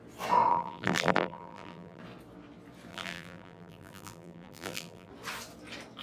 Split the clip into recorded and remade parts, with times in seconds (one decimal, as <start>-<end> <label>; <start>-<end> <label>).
0.0-0.5 recorded; 0.5-2.0 remade; 2.0-2.9 recorded; 2.9-5.1 remade; 5.1-6.0 recorded